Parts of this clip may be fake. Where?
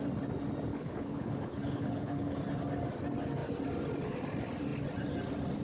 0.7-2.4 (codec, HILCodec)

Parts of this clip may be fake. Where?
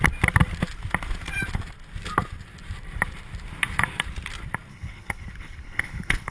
4.7-6.3 (codec, HILCodec)